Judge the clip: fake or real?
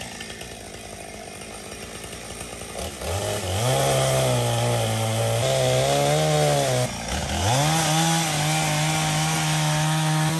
real